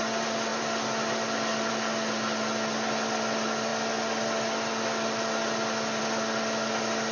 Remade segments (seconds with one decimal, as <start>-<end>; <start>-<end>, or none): none